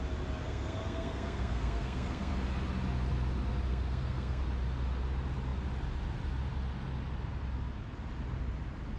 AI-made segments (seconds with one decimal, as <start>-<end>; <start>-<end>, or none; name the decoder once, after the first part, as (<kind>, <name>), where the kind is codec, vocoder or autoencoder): 0.4-2.3 (codec, SNAC); 3.7-4.4